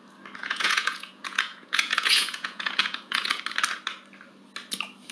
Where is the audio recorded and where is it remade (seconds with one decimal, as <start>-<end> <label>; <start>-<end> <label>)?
0.0-0.4 recorded; 0.4-3.4 remade; 3.4-5.1 recorded